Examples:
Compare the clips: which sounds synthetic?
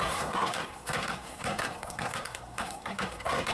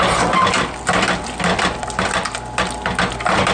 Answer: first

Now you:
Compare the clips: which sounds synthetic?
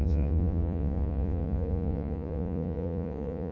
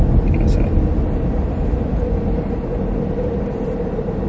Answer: first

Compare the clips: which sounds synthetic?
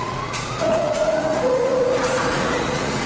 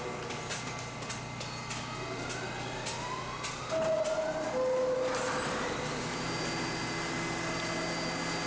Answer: first